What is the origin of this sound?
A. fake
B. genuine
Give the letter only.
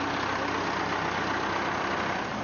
B